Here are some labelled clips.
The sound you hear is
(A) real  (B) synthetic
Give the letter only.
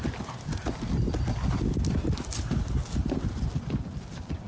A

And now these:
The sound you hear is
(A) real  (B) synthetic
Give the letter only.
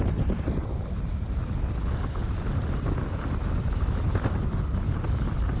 A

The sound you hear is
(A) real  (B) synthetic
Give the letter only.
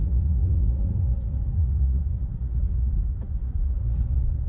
B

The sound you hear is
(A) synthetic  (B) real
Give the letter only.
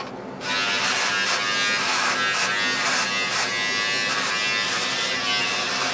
B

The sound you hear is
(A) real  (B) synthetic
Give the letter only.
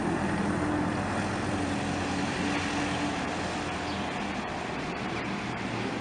A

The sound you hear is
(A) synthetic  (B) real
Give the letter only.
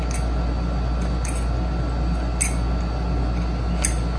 B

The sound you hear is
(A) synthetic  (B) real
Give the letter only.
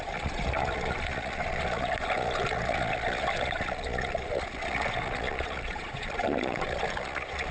A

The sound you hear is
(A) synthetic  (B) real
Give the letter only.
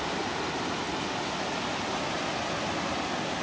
B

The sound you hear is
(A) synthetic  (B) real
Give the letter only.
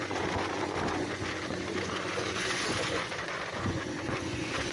A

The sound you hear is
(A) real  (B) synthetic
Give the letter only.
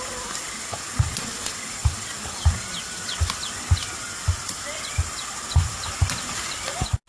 A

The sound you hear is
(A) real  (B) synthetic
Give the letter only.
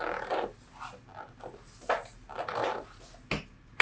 A